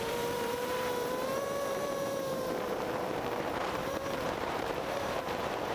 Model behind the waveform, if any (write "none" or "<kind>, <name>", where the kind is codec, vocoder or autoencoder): vocoder, BigVGAN v2